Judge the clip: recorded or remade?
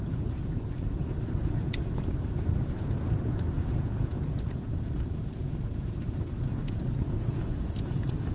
remade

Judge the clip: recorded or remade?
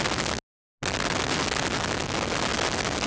recorded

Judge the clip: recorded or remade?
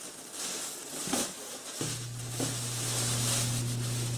recorded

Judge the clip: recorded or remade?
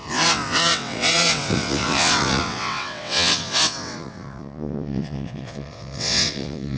remade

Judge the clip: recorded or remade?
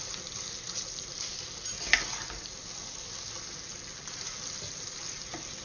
recorded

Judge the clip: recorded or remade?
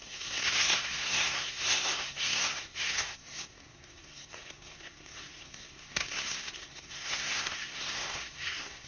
remade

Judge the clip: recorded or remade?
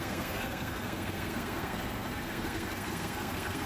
remade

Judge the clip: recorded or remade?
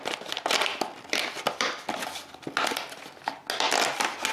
recorded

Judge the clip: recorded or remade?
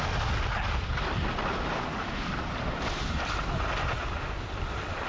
recorded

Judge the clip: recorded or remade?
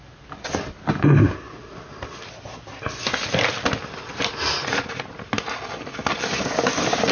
recorded